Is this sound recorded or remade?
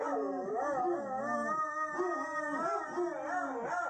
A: recorded